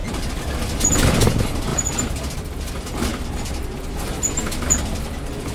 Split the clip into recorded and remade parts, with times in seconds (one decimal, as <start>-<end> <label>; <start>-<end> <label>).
0.0-5.5 recorded